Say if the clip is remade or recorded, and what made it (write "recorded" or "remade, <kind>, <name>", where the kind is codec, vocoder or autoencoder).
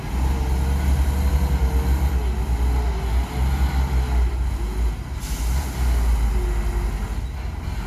recorded